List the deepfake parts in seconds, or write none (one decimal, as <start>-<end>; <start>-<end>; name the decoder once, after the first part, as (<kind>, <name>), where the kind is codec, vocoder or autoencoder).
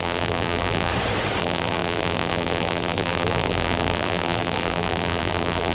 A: 0.0-0.9 (vocoder, BigVGAN v2); 1.4-5.7